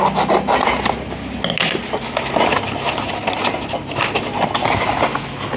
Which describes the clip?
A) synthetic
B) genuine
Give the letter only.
B